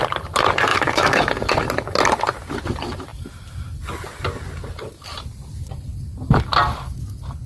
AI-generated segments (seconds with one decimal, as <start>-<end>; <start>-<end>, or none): 0.7-1.3